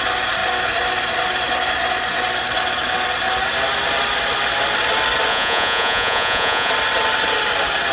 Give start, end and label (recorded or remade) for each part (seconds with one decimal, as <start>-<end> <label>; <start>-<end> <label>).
0.0-5.3 recorded; 5.3-6.7 remade; 6.7-7.9 recorded

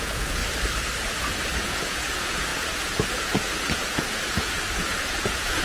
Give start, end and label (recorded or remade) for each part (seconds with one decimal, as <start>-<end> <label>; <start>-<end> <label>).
0.0-0.4 remade; 0.4-1.4 recorded; 1.4-5.6 remade

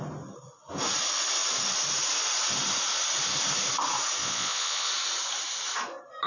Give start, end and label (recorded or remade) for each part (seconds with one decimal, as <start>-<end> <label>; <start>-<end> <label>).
0.0-4.2 recorded; 4.2-4.9 remade; 4.9-6.3 recorded

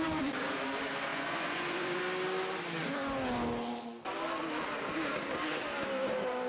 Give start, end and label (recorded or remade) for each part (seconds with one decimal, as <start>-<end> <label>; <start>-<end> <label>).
0.0-1.1 recorded; 1.1-2.0 remade; 2.0-6.5 recorded

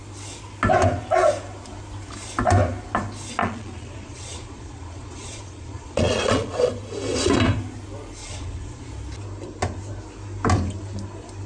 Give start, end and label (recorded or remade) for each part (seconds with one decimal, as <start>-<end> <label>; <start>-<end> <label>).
0.0-3.4 recorded; 3.4-6.7 remade; 6.7-8.2 recorded; 8.2-8.9 remade; 8.9-11.5 recorded

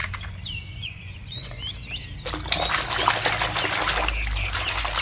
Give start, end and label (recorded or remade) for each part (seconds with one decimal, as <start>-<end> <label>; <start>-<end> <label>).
0.0-1.7 remade; 1.7-5.0 recorded